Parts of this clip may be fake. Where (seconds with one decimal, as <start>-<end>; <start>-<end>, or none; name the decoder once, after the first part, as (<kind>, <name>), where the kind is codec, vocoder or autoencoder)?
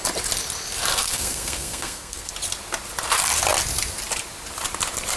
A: 0.9-2.3 (codec, SNAC)